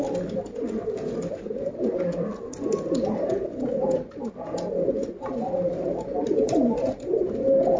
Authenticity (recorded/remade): recorded